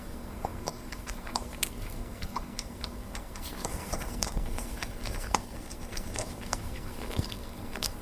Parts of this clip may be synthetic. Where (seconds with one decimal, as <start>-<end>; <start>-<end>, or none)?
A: 0.0-8.0